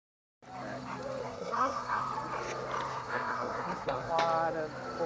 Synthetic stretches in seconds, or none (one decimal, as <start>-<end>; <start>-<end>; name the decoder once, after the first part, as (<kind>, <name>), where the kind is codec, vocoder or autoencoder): 1.2-2.0 (codec, SNAC); 2.9-4.1